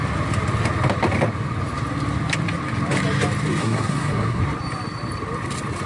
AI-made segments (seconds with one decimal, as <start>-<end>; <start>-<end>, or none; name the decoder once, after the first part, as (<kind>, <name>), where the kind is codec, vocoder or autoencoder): 3.6-4.4 (codec, SNAC)